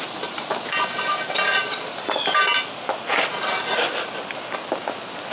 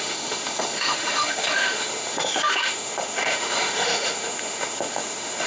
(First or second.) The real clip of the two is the first